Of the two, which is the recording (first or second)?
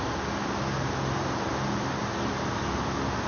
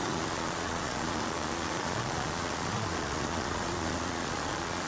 first